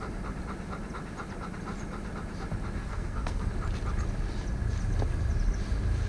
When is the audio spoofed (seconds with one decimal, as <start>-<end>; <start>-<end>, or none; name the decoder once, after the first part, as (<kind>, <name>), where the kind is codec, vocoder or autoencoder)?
2.8-3.5 (codec, SNAC)